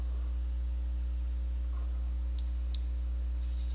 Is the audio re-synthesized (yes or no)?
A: no